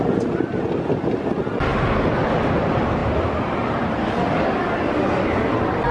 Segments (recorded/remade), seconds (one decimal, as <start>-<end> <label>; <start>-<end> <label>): 0.0-5.9 recorded